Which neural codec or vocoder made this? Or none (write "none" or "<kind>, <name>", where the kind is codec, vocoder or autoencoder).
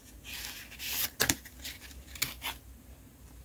none